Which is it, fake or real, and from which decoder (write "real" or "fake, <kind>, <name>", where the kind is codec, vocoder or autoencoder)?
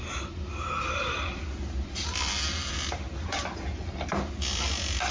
real